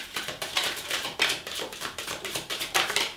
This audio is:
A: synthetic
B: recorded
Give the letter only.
A